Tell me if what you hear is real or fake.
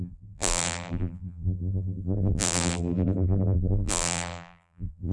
fake